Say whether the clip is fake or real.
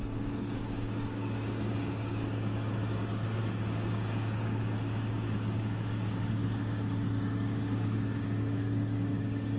fake